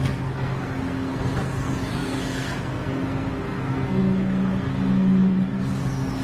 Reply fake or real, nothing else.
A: fake